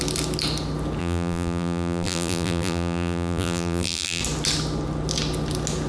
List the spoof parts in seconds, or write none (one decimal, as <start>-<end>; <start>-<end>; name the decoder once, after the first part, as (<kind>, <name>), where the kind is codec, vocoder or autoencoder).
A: 1.0-4.2 (vocoder, BigVGAN v2)

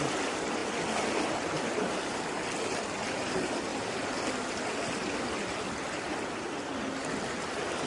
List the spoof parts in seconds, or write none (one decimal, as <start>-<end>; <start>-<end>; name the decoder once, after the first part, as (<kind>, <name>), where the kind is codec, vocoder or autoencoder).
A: 3.7-4.5 (vocoder, BigVGAN v2)

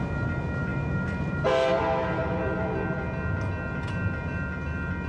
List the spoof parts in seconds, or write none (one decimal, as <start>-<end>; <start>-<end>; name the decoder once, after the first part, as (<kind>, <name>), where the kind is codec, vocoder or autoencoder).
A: 0.7-1.8 (vocoder, BigVGAN v2)